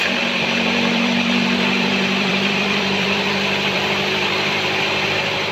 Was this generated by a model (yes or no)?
yes